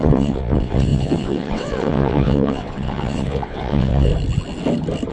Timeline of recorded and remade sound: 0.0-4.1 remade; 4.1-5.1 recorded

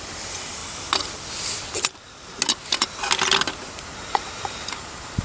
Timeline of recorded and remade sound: 0.0-0.6 remade; 0.6-3.7 recorded; 3.7-5.2 remade

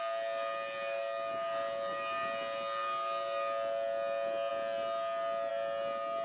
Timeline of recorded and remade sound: 0.0-6.2 recorded

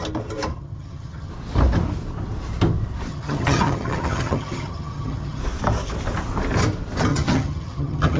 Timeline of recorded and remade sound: 0.0-0.5 recorded; 0.5-1.3 remade; 1.3-3.1 recorded; 3.1-5.4 remade; 5.4-7.1 recorded; 7.1-8.2 remade

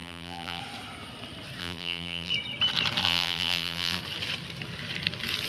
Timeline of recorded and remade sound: 0.0-0.6 remade; 0.6-1.6 recorded; 1.6-2.3 remade; 2.3-3.0 recorded; 3.0-4.0 remade; 4.0-5.5 recorded

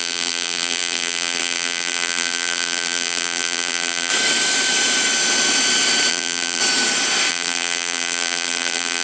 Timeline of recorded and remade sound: 0.0-4.1 remade; 4.1-6.1 recorded; 6.1-6.6 remade; 6.6-7.3 recorded; 7.3-9.0 remade

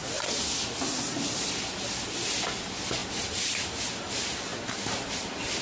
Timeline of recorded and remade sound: 0.0-3.0 recorded; 3.0-4.1 remade; 4.1-4.5 recorded; 4.5-5.1 remade; 5.1-5.6 recorded